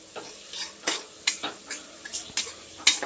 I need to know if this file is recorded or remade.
recorded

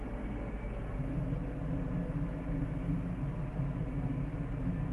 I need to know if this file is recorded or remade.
recorded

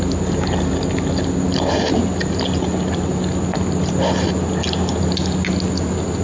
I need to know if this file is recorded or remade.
recorded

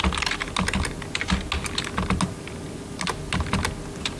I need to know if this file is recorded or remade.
recorded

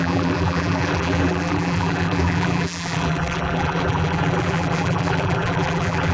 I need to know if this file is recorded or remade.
remade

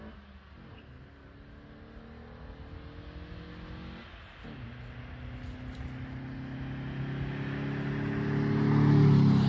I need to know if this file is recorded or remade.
recorded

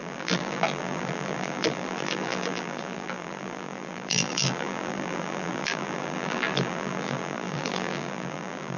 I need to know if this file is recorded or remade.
remade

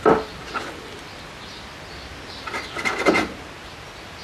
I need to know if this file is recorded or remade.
recorded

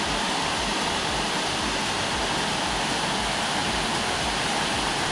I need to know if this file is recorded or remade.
recorded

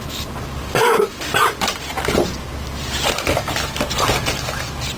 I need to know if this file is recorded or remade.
remade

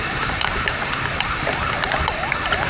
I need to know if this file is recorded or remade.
remade